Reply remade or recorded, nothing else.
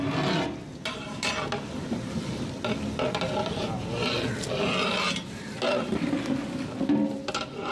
recorded